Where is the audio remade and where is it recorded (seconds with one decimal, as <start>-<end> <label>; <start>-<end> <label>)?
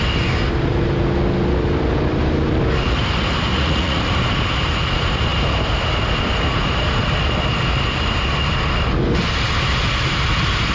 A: 0.0-3.5 recorded; 3.5-4.1 remade; 4.1-10.7 recorded